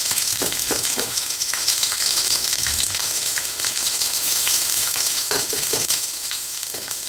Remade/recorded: remade